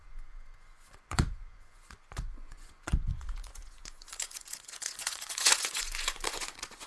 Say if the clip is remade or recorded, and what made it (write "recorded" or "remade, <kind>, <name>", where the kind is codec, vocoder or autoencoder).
remade, vocoder, Vocos